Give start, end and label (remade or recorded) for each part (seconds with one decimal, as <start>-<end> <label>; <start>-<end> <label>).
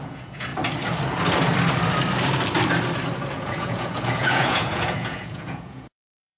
0.0-0.5 remade; 0.5-3.4 recorded; 3.4-6.4 remade